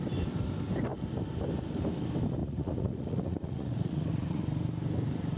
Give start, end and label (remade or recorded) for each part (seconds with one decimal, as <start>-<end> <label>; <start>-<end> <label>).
0.0-2.4 recorded; 2.4-4.4 remade; 4.4-5.4 recorded